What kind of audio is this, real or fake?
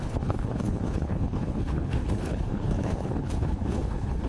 fake